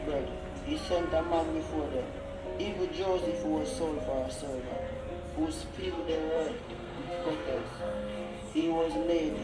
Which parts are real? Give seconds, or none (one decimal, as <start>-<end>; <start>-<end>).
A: 0.0-5.8; 8.9-9.4